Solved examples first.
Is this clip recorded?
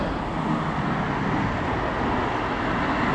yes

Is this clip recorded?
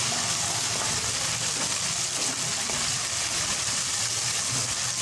yes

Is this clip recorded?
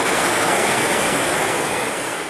no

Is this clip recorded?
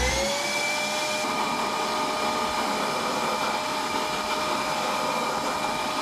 yes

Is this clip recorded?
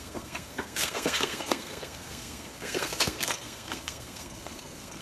no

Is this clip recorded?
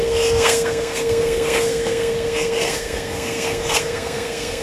no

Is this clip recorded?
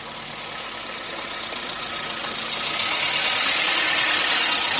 yes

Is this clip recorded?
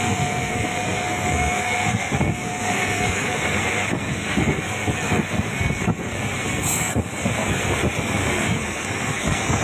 no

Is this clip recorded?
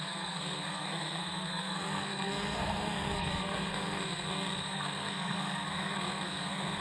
no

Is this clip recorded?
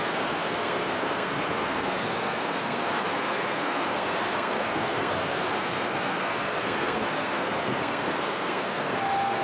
no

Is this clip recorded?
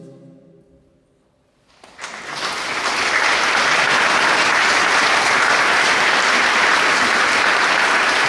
yes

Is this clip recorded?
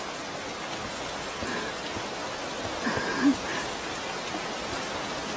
yes